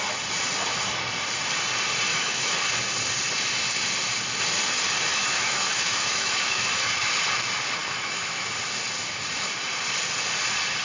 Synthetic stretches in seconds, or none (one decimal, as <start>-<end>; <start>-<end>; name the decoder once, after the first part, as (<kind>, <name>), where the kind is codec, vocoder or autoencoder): 2.1-2.6 (autoencoder, DAC-VAE); 5.1-7.2; 7.8-8.5